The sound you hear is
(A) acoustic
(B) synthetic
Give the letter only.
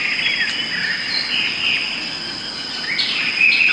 A